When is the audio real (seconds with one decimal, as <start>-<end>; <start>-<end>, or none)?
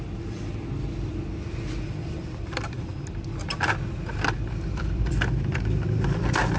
1.1-2.2; 2.9-4.5